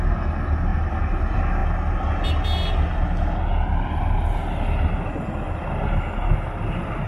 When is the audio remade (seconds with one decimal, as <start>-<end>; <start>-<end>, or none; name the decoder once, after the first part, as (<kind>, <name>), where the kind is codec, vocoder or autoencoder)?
0.7-1.2 (vocoder, BigVGAN v2)